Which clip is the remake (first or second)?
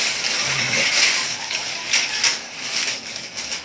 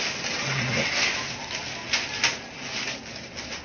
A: first